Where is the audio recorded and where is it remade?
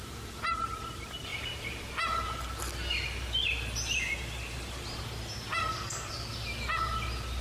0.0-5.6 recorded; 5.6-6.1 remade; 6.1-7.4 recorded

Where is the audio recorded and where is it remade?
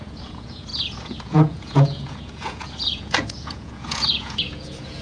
0.0-5.0 remade